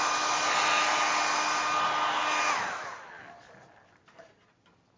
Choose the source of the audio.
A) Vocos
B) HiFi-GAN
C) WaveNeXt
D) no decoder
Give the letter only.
D